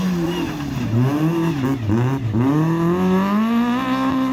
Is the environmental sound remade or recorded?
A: recorded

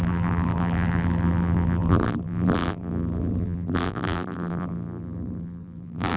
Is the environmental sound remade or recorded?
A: remade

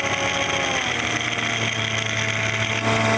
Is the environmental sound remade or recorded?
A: recorded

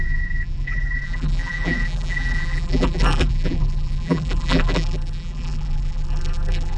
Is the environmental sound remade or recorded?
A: remade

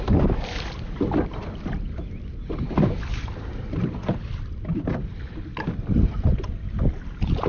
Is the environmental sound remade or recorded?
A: remade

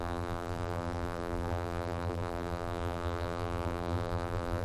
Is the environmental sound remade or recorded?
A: remade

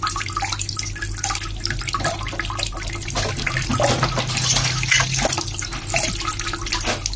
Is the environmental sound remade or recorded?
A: recorded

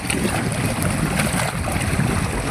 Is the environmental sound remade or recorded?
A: recorded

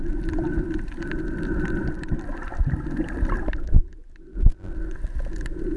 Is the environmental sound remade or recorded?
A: recorded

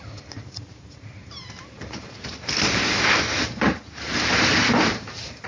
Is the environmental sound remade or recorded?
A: remade